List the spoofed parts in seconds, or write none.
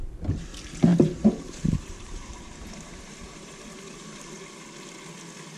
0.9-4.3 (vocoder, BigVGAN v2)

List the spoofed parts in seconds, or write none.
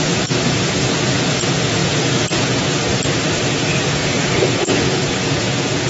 0.0-2.9 (vocoder, Vocos); 3.5-4.0; 4.6-5.9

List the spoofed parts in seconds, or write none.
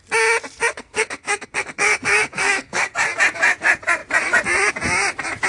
0.7-2.8 (codec, SNAC)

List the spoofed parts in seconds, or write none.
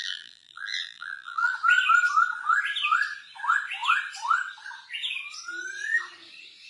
0.0-1.5 (vocoder, BigVGAN v2)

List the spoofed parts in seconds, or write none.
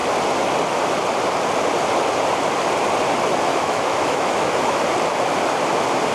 3.5-4.8 (autoencoder, DAC-VAE)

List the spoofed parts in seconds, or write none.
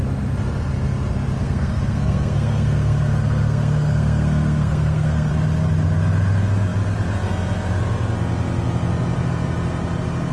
1.4-5.3 (codec, SNAC)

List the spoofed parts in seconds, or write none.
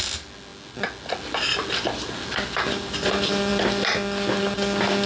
none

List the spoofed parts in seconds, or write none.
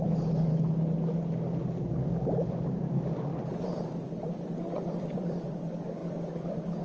0.0-0.5 (codec, DAC); 1.9-3.3; 5.0-6.8